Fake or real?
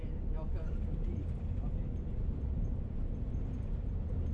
real